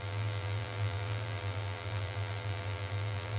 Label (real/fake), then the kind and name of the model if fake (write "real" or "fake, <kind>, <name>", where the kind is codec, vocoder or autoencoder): fake, vocoder, BigVGAN v2